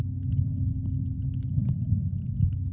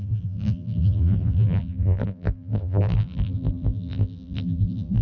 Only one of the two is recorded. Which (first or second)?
first